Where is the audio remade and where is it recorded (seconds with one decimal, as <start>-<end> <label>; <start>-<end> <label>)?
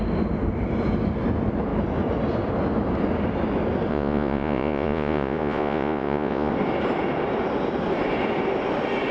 0.0-3.9 recorded; 3.9-6.5 remade; 6.5-9.1 recorded